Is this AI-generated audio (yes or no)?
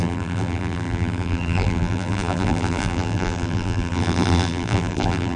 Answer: yes